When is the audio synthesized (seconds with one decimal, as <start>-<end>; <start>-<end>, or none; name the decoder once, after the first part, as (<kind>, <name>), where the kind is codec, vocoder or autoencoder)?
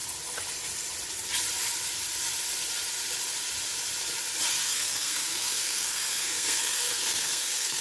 4.5-7.8 (codec, SNAC)